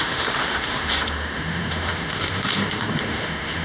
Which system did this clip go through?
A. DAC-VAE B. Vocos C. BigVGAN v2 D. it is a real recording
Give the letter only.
A